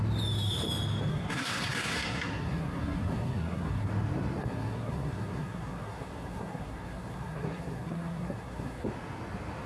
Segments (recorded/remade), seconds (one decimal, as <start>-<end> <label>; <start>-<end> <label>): 0.0-1.1 recorded; 1.1-3.9 remade; 3.9-4.4 recorded; 4.4-8.9 remade; 8.9-9.7 recorded